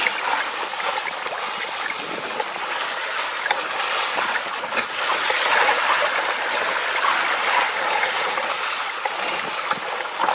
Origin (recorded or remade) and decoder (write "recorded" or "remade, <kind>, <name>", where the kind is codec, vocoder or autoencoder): recorded